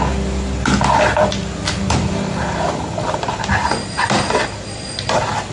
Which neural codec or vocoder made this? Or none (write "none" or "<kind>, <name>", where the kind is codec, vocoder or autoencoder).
none